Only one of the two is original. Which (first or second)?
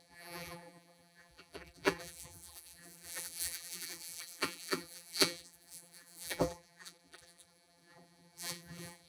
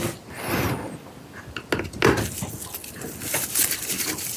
second